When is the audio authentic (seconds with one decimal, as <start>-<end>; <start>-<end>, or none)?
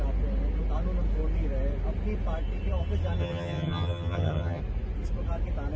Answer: 0.0-3.2; 4.6-5.8